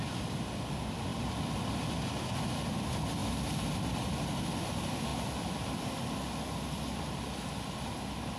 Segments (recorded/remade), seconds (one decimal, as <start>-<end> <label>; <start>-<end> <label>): 0.0-1.1 recorded; 1.1-1.7 remade; 1.7-5.1 recorded; 5.1-6.0 remade; 6.0-8.4 recorded